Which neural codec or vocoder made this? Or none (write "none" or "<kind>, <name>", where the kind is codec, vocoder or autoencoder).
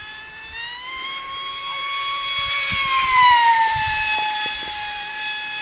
vocoder, BigVGAN v2